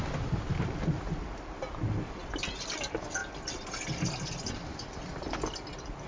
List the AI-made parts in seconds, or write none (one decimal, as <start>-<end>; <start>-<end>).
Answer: none